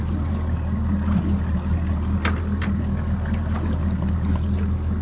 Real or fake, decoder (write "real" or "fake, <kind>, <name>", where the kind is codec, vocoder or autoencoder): real